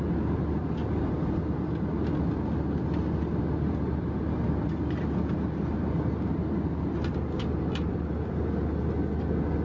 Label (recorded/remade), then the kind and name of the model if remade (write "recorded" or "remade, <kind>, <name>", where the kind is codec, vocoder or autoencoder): recorded